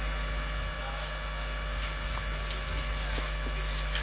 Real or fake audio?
real